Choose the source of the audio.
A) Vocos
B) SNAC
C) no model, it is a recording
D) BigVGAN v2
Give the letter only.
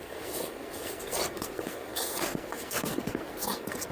B